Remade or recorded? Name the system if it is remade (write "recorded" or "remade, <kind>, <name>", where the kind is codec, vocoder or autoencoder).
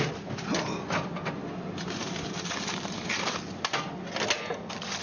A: recorded